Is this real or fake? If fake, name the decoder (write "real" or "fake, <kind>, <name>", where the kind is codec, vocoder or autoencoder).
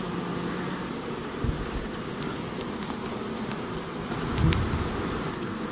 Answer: real